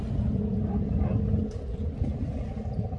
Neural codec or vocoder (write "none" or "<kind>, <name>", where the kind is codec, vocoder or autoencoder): none